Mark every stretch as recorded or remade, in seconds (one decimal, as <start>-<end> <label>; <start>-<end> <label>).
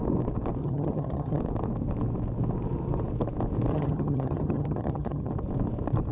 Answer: 0.0-0.6 recorded; 0.6-1.4 remade; 1.4-3.7 recorded; 3.7-5.3 remade; 5.3-6.1 recorded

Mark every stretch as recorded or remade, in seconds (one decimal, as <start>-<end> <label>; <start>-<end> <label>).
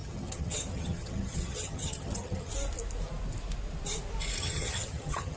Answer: 0.0-2.5 remade; 2.5-4.4 recorded; 4.4-5.4 remade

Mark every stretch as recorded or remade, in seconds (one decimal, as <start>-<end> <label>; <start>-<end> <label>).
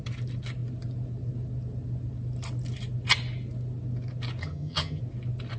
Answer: 0.0-4.4 recorded; 4.4-5.0 remade; 5.0-5.6 recorded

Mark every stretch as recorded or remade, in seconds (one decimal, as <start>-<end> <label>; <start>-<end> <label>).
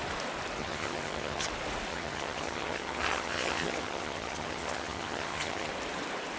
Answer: 0.0-0.6 recorded; 0.6-1.5 remade; 1.5-1.9 recorded; 1.9-5.7 remade; 5.7-6.4 recorded